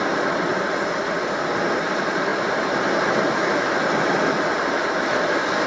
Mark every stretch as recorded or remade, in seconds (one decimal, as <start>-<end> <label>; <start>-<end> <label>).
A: 0.0-5.7 recorded

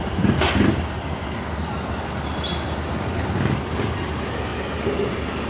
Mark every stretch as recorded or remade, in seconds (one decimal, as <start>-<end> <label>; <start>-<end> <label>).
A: 0.0-5.5 recorded

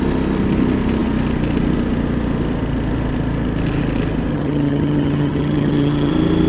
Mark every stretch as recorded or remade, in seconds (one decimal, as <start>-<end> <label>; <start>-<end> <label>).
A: 0.0-4.3 recorded; 4.3-6.1 remade; 6.1-6.5 recorded

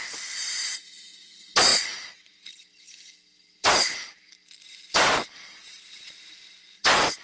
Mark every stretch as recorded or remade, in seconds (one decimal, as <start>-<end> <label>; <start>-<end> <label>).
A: 0.0-7.2 recorded